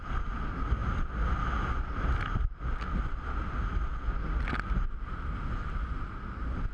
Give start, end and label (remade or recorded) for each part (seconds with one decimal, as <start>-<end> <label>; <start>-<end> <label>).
0.0-6.7 recorded